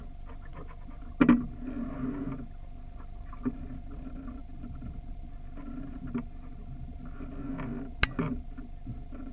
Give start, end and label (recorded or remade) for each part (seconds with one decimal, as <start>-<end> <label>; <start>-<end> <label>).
0.0-9.3 recorded